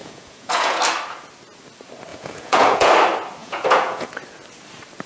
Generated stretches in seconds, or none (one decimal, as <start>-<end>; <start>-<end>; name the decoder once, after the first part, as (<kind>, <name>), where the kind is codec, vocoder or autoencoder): 0.0-0.8 (vocoder, Vocos); 2.1-2.9; 3.4-4.1